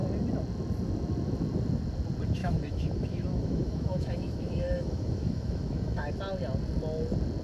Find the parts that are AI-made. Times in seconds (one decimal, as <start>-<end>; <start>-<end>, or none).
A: 2.4-6.2

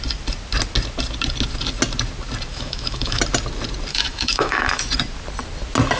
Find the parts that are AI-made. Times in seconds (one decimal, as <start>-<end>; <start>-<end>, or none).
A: 2.5-3.2; 3.9-4.9

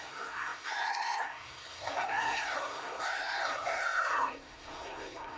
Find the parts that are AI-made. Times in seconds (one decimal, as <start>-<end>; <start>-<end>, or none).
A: 0.0-5.4

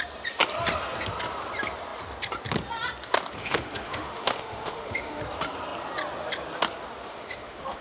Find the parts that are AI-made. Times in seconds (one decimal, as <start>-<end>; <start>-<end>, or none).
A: 3.4-5.2; 7.1-7.8

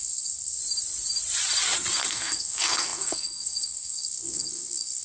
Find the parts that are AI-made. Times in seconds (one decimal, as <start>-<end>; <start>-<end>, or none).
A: 0.0-0.6; 2.1-5.0

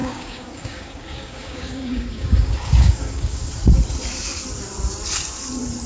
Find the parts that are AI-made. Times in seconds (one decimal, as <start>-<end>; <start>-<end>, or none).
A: 0.0-3.5

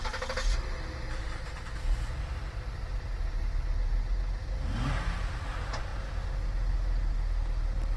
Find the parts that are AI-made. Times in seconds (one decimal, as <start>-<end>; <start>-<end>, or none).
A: none